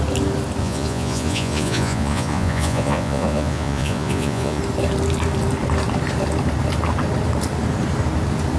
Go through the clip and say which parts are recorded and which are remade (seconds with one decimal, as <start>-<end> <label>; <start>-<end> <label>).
0.0-0.6 recorded; 0.6-4.6 remade; 4.6-8.6 recorded